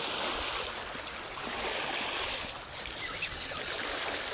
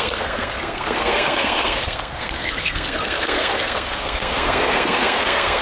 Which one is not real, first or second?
second